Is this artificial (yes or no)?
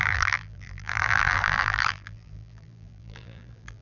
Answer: yes